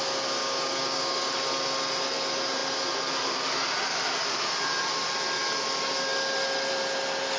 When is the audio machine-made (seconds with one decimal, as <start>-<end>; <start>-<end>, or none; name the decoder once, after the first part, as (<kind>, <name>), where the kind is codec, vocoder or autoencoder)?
0.4-1.3 (codec, DAC)